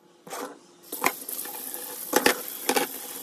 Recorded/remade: recorded